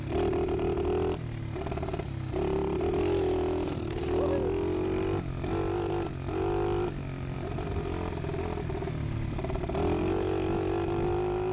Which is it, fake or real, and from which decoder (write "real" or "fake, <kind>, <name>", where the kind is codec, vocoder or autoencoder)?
real